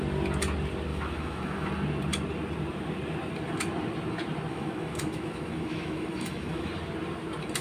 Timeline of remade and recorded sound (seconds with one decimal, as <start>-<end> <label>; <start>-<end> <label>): 0.0-0.9 recorded; 0.9-1.7 remade; 1.7-4.5 recorded; 4.5-6.7 remade; 6.7-7.6 recorded